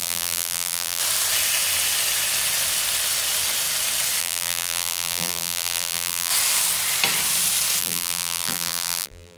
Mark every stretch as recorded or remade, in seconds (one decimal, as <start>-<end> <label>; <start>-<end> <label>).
0.0-1.0 remade; 1.0-4.2 recorded; 4.2-6.3 remade; 6.3-7.8 recorded; 7.8-9.4 remade